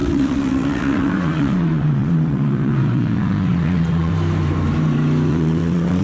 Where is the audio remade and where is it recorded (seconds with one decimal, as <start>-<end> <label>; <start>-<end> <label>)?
0.0-4.1 remade; 4.1-5.3 recorded; 5.3-6.0 remade